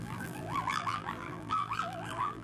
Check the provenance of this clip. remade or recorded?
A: remade